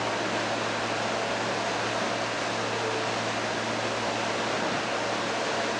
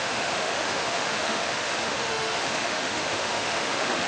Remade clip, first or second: second